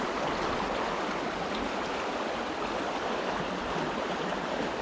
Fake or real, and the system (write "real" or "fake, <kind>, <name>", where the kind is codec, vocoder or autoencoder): real